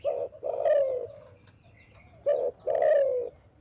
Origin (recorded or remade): recorded